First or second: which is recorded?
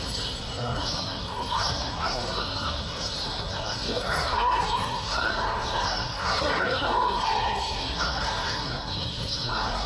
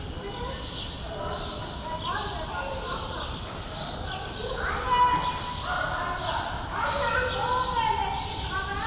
second